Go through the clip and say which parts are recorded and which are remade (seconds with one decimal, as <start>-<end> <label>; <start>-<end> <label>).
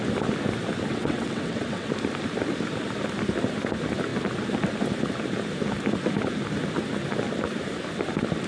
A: 0.0-0.9 recorded; 0.9-1.9 remade; 1.9-8.5 recorded